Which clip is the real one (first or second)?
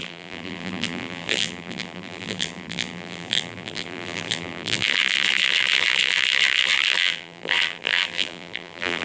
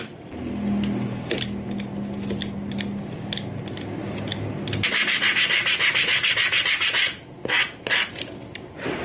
second